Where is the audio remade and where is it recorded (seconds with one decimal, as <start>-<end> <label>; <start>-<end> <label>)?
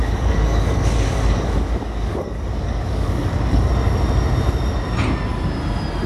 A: 0.0-3.7 remade; 3.7-6.1 recorded